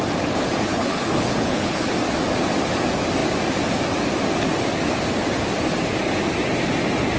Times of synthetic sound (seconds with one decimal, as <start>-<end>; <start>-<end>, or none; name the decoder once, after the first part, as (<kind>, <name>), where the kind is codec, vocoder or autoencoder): 0.7-1.9 (codec, HILCodec)